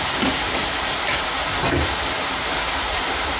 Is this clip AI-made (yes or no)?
yes